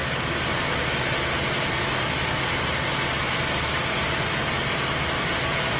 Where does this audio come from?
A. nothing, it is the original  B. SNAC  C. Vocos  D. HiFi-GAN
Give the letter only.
A